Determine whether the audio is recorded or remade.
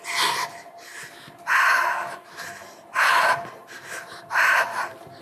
recorded